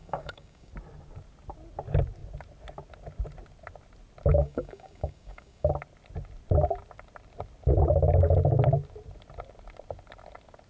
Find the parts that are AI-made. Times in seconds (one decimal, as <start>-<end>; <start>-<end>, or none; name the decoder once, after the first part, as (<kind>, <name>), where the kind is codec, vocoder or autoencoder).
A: 0.0-0.7 (codec, DAC); 4.3-5.7